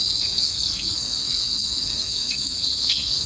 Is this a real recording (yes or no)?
no